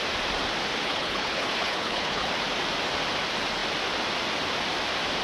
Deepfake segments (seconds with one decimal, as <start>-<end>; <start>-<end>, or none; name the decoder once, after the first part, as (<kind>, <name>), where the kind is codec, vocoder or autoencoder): 0.8-2.3 (codec, HILCodec)